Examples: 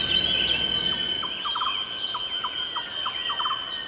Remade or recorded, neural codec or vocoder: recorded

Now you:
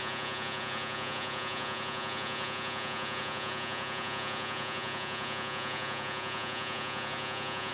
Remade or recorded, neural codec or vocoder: remade, vocoder, Vocos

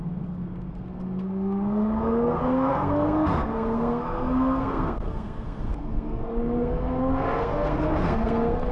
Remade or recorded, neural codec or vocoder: remade, codec, SNAC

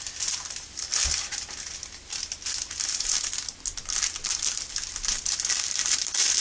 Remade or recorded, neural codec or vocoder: recorded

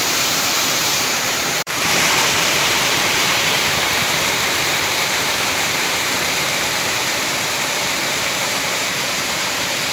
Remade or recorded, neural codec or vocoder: remade, vocoder, BigVGAN v2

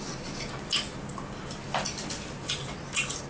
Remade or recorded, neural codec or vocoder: recorded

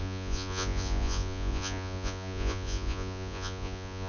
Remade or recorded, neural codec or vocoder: remade, vocoder, Vocos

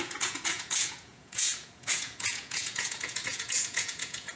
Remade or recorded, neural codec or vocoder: remade, vocoder, Vocos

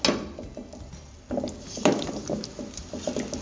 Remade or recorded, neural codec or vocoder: recorded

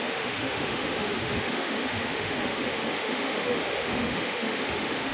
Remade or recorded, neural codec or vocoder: remade, autoencoder, DAC-VAE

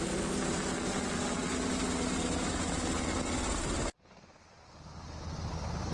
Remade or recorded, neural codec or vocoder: recorded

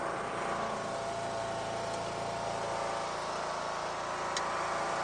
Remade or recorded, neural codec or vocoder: recorded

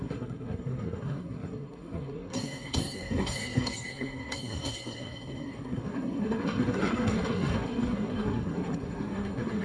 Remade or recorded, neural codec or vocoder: remade, codec, SNAC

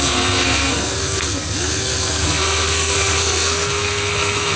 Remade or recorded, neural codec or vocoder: remade, codec, SNAC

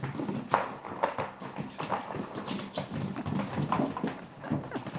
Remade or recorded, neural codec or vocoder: recorded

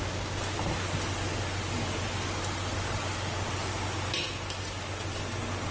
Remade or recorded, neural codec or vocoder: recorded